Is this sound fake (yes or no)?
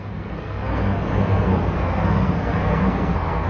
yes